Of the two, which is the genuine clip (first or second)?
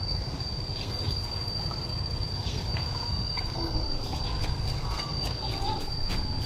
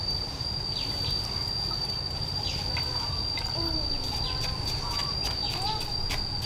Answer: second